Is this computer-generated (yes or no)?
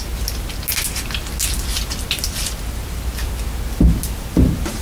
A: no